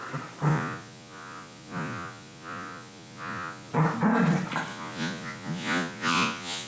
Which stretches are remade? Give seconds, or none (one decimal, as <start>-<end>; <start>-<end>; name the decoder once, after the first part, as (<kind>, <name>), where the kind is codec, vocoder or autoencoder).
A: 0.5-3.7 (vocoder, Vocos); 4.7-6.7